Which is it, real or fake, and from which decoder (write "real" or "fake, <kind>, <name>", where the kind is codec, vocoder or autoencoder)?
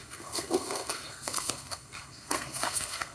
fake, codec, SNAC